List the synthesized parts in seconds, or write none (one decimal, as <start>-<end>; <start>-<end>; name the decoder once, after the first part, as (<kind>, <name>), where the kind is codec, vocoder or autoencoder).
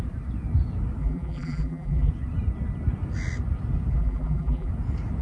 1.0-2.1 (vocoder, BigVGAN v2); 3.9-4.7